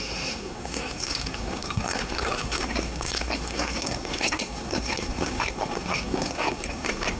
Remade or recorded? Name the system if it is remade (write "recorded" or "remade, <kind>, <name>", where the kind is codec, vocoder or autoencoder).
remade, codec, SNAC